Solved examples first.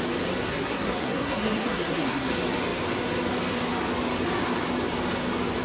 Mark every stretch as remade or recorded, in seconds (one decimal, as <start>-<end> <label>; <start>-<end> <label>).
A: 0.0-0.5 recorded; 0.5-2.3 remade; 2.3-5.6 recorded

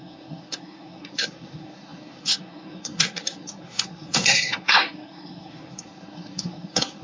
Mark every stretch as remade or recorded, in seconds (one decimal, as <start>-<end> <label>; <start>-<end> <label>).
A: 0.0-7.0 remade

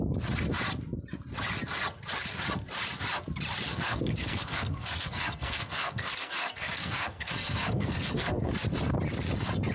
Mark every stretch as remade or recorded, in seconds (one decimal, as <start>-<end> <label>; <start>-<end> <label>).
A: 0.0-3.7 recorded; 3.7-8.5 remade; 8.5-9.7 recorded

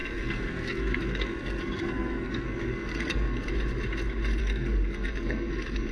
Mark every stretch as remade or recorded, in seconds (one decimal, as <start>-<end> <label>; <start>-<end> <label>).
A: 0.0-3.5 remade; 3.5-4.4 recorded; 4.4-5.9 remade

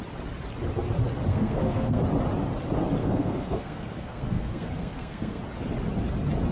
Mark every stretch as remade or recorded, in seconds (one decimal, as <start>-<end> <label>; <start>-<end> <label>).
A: 0.0-1.3 recorded; 1.3-2.0 remade; 2.0-3.0 recorded; 3.0-5.4 remade; 5.4-6.5 recorded